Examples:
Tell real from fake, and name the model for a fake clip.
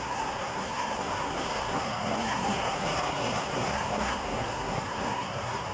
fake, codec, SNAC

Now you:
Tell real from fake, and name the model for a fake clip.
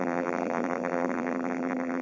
fake, vocoder, BigVGAN v2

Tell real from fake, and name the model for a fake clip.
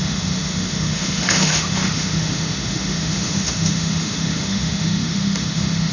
fake, autoencoder, DAC-VAE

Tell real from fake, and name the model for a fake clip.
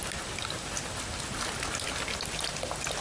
real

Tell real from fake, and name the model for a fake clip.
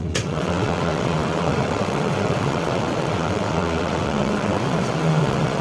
fake, vocoder, WaveNeXt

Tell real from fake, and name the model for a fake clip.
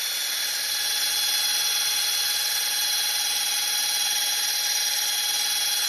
real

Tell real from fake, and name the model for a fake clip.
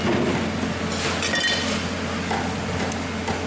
real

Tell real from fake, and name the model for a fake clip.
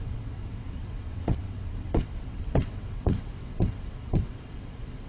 fake, vocoder, WaveNeXt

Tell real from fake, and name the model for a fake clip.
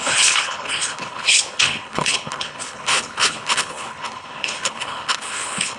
fake, codec, HILCodec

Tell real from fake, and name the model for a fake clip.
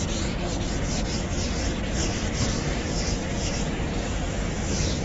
real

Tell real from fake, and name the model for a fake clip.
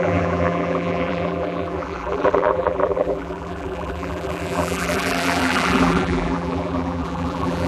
fake, vocoder, BigVGAN v2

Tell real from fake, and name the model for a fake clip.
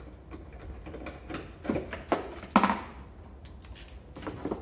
real